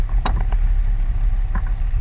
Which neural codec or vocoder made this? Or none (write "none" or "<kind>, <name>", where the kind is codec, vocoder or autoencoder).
none